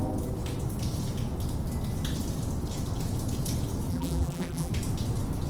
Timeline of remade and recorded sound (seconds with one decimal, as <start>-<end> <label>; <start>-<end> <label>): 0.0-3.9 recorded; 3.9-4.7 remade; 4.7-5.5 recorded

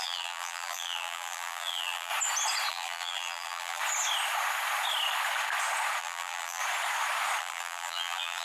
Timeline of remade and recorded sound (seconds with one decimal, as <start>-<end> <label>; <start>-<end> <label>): 0.0-2.1 remade; 2.1-2.7 recorded; 2.7-3.8 remade; 3.8-6.0 recorded; 6.0-6.6 remade; 6.6-7.4 recorded; 7.4-8.4 remade

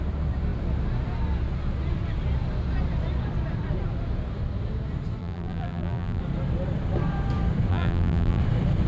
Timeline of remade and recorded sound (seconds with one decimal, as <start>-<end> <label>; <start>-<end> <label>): 0.0-5.2 recorded; 5.2-6.2 remade; 6.2-7.7 recorded; 7.7-8.4 remade; 8.4-8.9 recorded

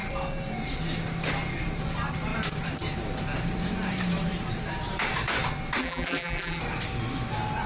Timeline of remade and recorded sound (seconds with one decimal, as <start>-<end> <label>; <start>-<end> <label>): 0.0-5.8 recorded; 5.8-6.6 remade; 6.6-7.7 recorded

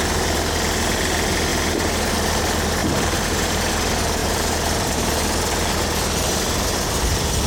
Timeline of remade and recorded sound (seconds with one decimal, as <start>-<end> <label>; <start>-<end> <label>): 0.0-2.8 recorded; 2.8-3.7 remade; 3.7-4.2 recorded; 4.2-7.0 remade; 7.0-7.5 recorded